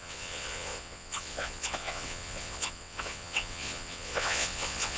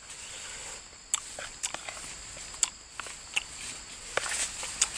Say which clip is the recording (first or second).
second